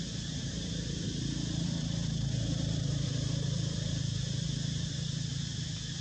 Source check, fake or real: fake